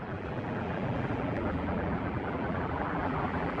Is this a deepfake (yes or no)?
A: yes